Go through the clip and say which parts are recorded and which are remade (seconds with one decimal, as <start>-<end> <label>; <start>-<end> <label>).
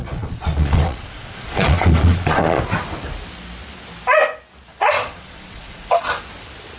0.0-2.6 remade; 2.6-4.7 recorded; 4.7-6.1 remade; 6.1-6.8 recorded